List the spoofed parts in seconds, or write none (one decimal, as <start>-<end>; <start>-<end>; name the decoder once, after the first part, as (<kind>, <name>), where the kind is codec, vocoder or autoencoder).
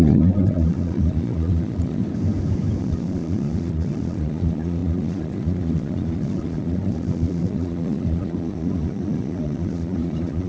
0.0-2.0 (vocoder, Vocos); 2.8-10.5